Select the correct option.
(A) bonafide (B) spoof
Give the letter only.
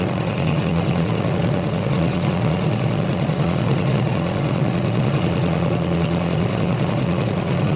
B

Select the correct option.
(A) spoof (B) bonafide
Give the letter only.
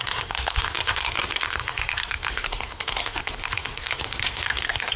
A